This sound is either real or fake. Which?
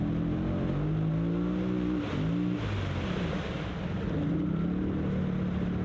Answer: real